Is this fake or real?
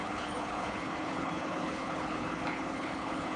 fake